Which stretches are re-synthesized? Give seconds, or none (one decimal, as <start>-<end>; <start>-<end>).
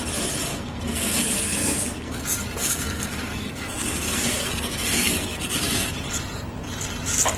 0.5-2.2; 2.6-5.9